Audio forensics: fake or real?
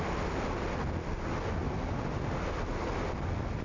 real